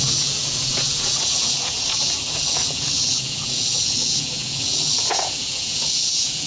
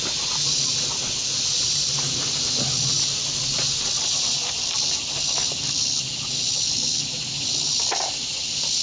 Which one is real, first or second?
second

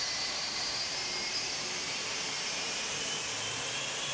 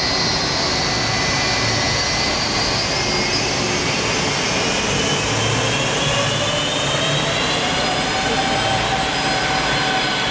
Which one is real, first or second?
second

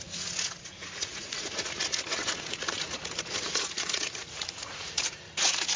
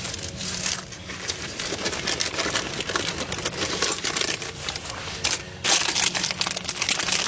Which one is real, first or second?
second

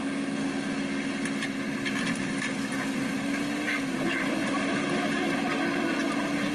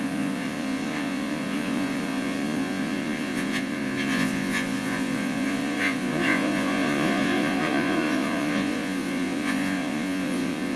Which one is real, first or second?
first